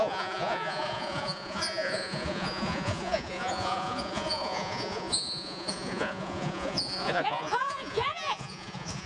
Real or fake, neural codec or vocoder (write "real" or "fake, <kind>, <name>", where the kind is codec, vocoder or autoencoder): fake, vocoder, Vocos